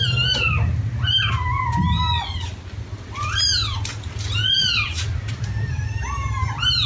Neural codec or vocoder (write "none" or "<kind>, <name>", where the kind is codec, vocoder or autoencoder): none